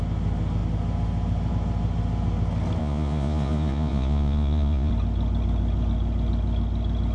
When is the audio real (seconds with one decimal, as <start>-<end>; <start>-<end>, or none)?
0.0-2.8; 4.9-7.1